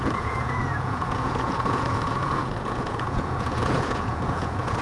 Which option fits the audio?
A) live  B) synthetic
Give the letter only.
B